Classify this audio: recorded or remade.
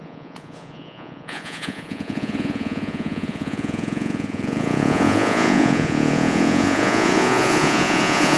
remade